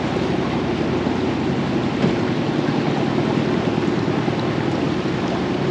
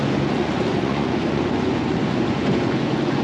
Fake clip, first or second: second